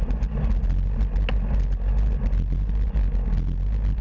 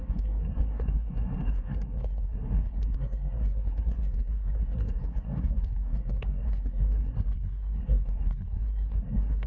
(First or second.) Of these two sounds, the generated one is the second